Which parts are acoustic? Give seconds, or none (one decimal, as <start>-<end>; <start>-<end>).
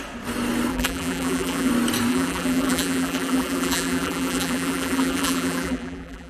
0.0-0.7; 1.7-2.1